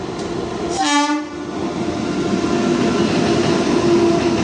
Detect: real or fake real